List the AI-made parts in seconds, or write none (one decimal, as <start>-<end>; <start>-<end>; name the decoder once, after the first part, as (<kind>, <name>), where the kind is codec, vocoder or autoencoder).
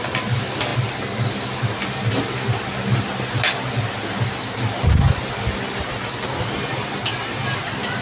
none